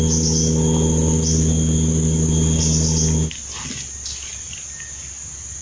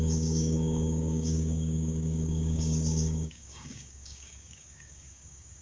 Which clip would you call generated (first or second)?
second